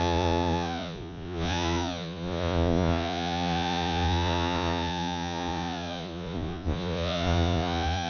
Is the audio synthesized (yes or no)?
yes